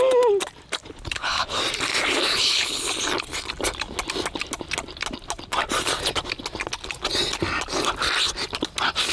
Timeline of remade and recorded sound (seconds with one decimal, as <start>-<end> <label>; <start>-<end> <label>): 0.0-0.8 recorded; 0.8-1.6 remade; 1.6-2.3 recorded; 2.3-2.9 remade; 2.9-9.1 recorded

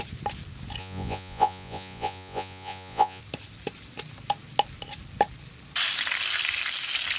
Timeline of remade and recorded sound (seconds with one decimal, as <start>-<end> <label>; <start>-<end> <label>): 0.0-0.8 recorded; 0.8-3.2 remade; 3.2-7.2 recorded

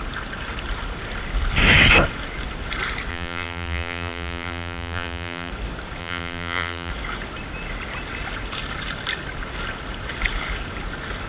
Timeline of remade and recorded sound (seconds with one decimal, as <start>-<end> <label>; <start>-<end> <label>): 0.0-3.1 recorded; 3.1-5.5 remade; 5.5-6.0 recorded; 6.0-6.9 remade; 6.9-11.3 recorded